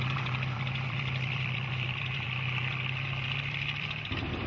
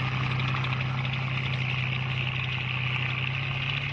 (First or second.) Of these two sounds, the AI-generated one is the first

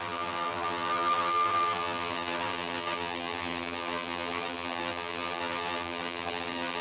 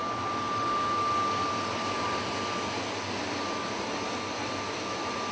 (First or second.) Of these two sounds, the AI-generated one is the first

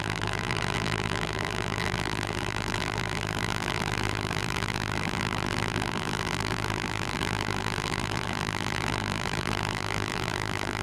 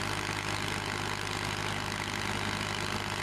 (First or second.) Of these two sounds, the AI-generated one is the first